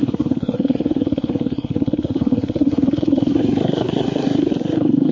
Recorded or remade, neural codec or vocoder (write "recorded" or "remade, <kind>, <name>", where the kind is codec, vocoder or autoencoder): remade, codec, SNAC